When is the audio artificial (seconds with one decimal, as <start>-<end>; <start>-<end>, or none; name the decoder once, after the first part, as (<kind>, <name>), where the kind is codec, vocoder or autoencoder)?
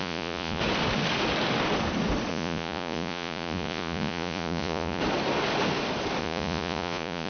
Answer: 0.0-0.6 (vocoder, Vocos); 2.3-5.0; 6.2-7.3